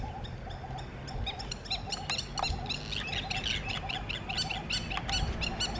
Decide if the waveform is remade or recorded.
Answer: recorded